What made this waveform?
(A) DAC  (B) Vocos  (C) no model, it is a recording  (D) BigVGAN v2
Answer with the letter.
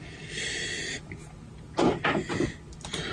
C